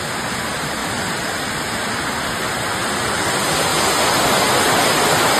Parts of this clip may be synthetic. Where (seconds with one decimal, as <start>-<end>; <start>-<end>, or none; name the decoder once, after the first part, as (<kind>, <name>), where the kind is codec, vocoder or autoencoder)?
none